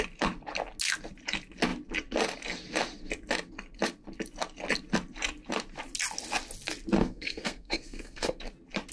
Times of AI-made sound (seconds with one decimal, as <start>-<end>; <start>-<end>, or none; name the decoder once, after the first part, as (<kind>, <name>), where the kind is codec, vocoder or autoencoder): 7.0-8.4 (codec, SNAC)